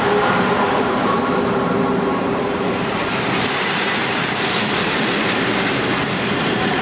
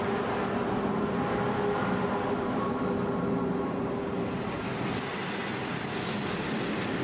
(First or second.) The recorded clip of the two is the second